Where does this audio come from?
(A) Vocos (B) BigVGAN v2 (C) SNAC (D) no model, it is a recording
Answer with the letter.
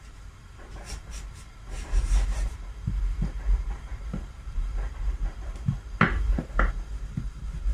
B